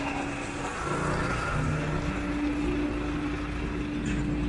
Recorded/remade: recorded